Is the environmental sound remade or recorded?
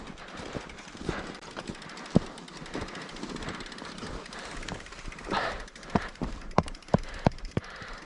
remade